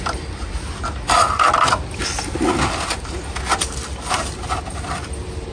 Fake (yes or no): no